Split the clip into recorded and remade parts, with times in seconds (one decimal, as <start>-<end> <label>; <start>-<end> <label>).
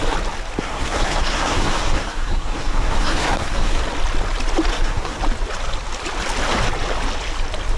0.0-0.6 recorded; 0.6-3.8 remade; 3.8-4.7 recorded; 4.7-5.2 remade; 5.2-7.8 recorded